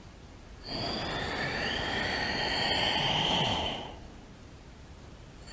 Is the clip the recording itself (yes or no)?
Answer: no